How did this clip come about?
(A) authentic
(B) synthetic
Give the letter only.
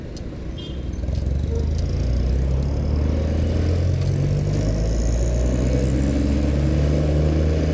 A